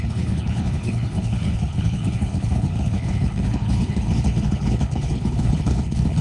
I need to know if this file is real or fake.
fake